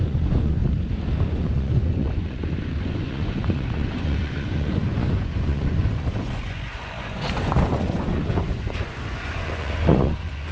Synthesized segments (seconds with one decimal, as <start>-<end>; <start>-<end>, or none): 0.0-0.6; 1.3-10.5